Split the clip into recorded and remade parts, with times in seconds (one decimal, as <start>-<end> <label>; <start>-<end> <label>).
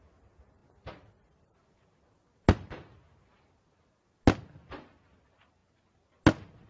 0.0-6.7 recorded